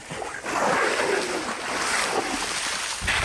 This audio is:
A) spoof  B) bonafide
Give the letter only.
B